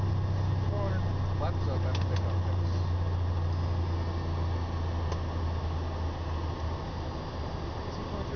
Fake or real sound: real